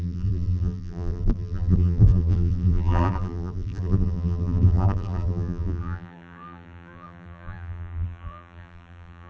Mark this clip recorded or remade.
remade